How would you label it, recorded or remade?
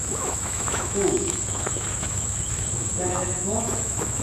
remade